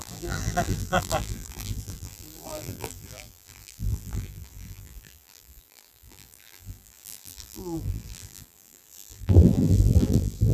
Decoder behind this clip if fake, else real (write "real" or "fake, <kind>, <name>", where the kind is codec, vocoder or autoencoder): fake, vocoder, BigVGAN v2